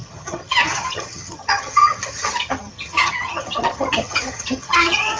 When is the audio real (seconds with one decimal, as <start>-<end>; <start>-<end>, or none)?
none